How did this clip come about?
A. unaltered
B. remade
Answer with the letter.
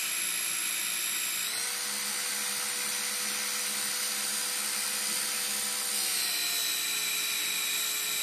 A